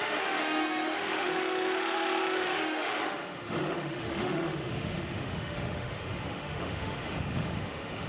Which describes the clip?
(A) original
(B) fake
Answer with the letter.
B